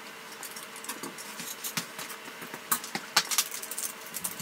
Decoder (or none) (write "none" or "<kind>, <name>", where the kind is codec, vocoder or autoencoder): none